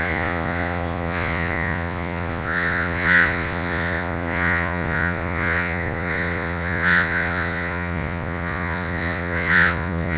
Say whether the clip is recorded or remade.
remade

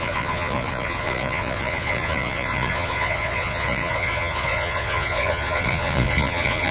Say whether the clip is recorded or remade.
remade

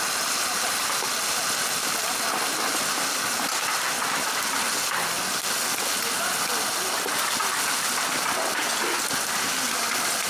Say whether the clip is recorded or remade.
recorded